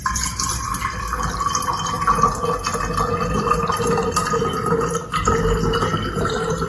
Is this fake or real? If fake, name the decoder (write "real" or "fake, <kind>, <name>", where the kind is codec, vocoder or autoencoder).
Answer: real